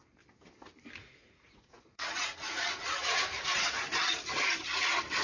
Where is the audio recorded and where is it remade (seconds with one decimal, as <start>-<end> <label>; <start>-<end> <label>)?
0.0-1.0 recorded; 1.0-3.8 remade; 3.8-5.2 recorded